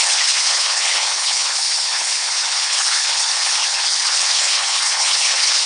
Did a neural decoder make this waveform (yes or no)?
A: yes